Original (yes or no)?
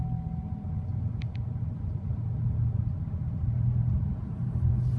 yes